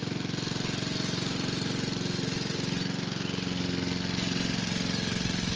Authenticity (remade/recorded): recorded